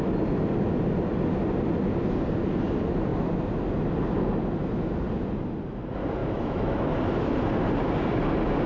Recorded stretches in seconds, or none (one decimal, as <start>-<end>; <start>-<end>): 0.0-6.2; 6.9-8.7